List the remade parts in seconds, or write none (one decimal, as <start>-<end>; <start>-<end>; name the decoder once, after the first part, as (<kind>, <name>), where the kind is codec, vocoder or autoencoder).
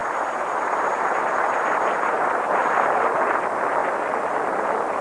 0.0-2.6 (vocoder, BigVGAN v2)